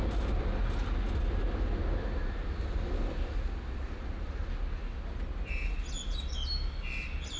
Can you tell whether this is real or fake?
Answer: real